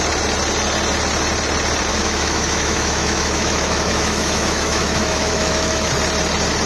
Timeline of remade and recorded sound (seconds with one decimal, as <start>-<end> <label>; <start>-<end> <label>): 0.0-1.9 recorded; 1.9-5.9 remade; 5.9-6.7 recorded

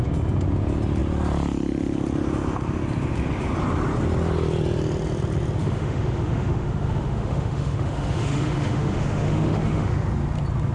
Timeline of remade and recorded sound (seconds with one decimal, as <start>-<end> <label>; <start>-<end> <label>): 0.0-5.6 recorded; 5.6-10.1 remade; 10.1-10.7 recorded